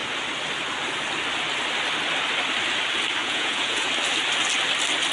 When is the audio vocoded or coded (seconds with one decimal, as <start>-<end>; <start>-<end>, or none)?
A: 3.2-3.9